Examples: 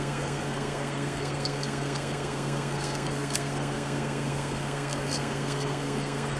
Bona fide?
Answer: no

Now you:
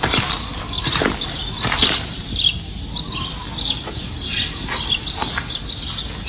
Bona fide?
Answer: yes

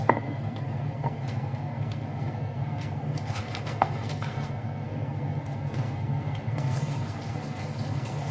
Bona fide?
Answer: no